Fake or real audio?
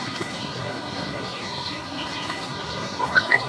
fake